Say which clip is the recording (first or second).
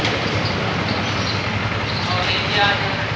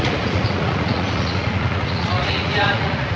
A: first